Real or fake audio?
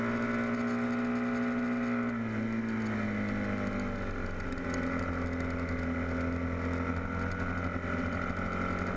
real